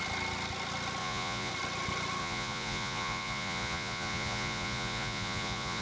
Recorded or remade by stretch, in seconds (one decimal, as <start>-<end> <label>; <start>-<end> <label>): 0.0-1.0 recorded; 1.0-1.5 remade; 1.5-2.2 recorded; 2.2-5.8 remade